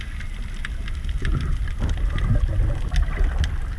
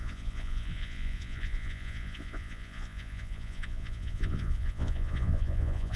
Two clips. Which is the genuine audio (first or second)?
first